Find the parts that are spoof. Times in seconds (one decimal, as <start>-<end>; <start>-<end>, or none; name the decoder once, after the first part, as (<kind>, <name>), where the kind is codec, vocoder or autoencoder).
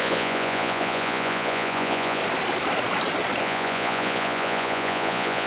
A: 0.0-2.2 (vocoder, Vocos); 3.4-5.5